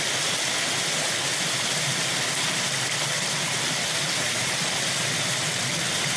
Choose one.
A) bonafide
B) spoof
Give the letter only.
A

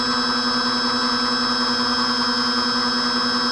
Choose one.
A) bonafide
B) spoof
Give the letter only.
A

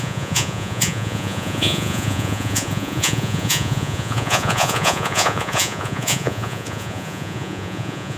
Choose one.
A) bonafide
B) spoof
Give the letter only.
B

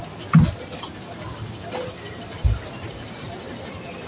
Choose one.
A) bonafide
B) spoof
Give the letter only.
A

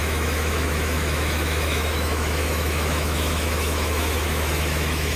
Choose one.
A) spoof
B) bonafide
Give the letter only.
A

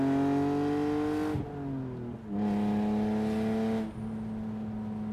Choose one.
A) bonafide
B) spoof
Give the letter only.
A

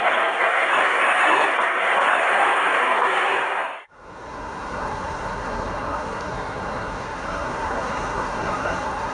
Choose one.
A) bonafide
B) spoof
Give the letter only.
B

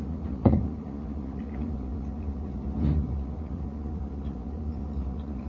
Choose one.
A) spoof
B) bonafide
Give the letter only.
A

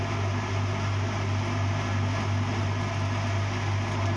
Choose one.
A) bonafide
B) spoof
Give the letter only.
A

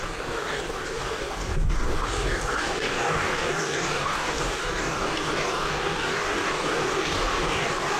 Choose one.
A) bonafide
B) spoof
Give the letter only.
B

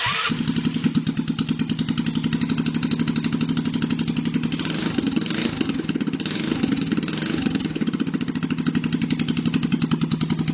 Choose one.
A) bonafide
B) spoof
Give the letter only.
A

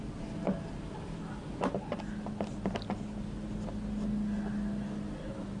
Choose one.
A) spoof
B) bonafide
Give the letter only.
B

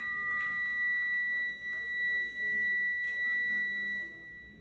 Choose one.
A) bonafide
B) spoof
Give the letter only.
A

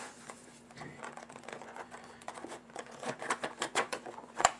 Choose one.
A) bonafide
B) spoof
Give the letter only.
B